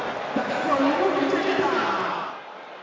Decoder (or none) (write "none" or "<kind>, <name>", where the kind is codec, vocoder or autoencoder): none